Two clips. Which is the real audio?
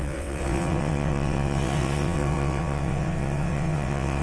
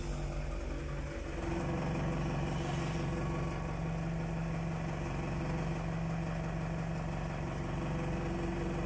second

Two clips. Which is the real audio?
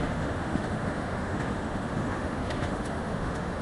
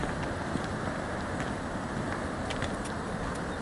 second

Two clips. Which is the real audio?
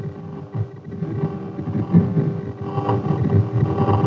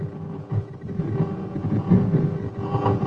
first